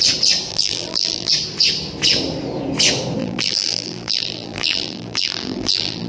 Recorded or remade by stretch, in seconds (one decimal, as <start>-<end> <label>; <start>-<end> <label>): 0.0-0.5 recorded; 0.5-1.3 remade; 1.3-3.2 recorded; 3.2-6.1 remade